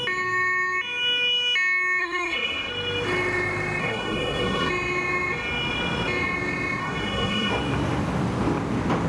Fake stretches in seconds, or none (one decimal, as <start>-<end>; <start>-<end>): 2.0-2.7; 3.8-4.7; 6.8-7.5